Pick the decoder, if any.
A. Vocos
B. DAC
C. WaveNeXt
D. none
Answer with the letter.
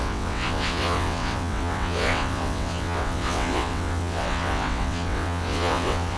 C